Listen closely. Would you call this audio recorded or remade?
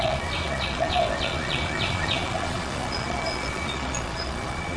remade